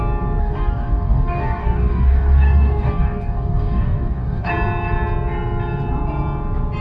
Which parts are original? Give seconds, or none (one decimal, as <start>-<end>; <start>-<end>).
0.0-0.4; 4.5-6.8